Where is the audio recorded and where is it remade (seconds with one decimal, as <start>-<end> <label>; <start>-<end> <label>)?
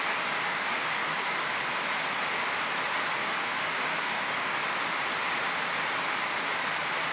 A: 0.0-0.4 recorded; 0.4-1.6 remade; 1.6-3.2 recorded; 3.2-4.8 remade; 4.8-7.1 recorded